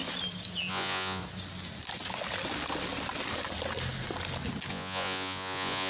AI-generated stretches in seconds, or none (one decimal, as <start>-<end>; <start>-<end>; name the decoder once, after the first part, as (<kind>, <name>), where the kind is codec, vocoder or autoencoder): 0.7-1.2 (vocoder, Vocos); 4.7-5.9